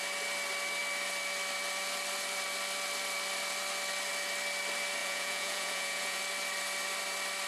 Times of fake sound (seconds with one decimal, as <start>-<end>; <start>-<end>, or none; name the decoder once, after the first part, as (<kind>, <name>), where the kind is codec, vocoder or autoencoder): 5.0-6.2 (vocoder, Vocos)